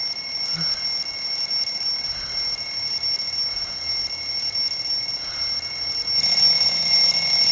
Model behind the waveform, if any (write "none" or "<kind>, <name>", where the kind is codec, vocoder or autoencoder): none